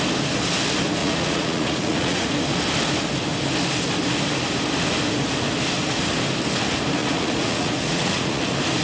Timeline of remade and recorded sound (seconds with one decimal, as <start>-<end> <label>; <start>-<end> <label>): 0.0-1.0 recorded; 1.0-2.3 remade; 2.3-7.0 recorded; 7.0-8.4 remade; 8.4-8.8 recorded